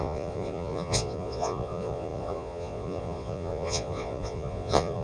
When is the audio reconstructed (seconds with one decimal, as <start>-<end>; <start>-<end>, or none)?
0.0-5.0